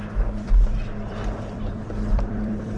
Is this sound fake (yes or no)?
yes